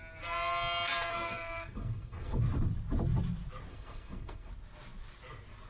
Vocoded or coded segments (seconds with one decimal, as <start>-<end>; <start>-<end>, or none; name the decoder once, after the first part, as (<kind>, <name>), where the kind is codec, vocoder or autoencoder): 1.1-2.4 (codec, SNAC); 3.7-4.5